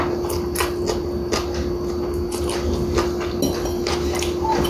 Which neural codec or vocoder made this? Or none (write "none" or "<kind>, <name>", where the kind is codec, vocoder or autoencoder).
none